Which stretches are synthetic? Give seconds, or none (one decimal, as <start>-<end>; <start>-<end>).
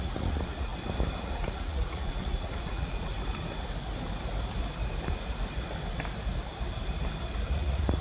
0.0-0.7; 1.2-3.1; 7.5-8.0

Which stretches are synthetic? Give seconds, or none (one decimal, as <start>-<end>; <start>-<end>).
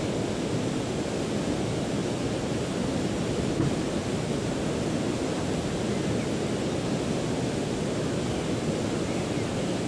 none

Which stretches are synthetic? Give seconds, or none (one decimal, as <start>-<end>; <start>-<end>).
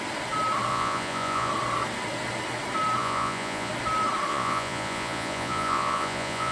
0.7-1.5; 3.0-3.7; 4.3-6.5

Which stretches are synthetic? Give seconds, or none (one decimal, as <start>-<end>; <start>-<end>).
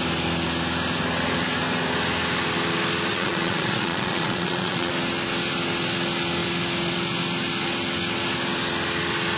3.1-4.9